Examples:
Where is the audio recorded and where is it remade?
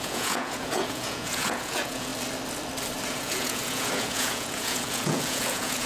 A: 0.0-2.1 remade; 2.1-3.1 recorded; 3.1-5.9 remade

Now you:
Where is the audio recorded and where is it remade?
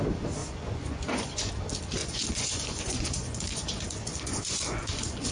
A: 0.0-0.4 recorded; 0.4-1.5 remade; 1.5-2.0 recorded; 2.0-5.3 remade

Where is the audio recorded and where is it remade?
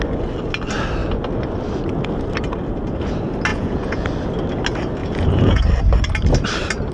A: 0.0-3.5 recorded; 3.5-4.1 remade; 4.1-5.0 recorded; 5.0-5.6 remade; 5.6-6.9 recorded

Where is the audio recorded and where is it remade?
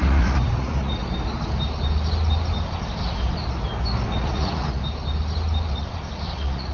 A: 0.0-1.0 remade; 1.0-4.1 recorded; 4.1-4.8 remade; 4.8-5.7 recorded; 5.7-6.7 remade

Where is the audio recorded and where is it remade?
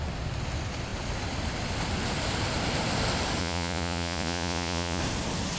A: 0.0-3.4 recorded; 3.4-5.0 remade; 5.0-5.6 recorded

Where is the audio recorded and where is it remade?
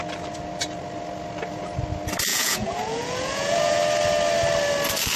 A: 0.0-2.3 recorded; 2.3-3.8 remade; 3.8-5.2 recorded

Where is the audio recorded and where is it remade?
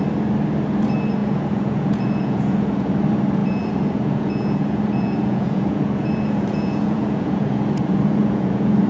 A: 0.0-1.2 recorded; 1.2-2.9 remade; 2.9-3.4 recorded; 3.4-8.9 remade